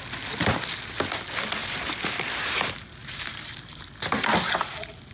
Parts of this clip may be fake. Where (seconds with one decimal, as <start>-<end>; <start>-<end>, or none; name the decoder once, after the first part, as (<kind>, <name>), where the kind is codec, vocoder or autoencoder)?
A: 1.6-3.8 (vocoder, BigVGAN v2)